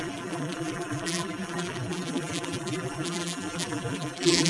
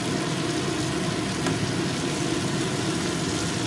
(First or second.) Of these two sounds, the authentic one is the second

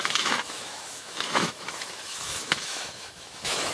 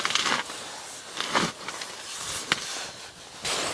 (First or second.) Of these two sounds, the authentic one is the second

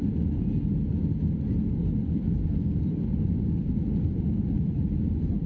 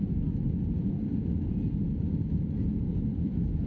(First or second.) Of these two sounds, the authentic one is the first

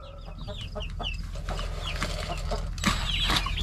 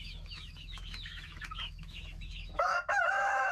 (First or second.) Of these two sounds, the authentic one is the first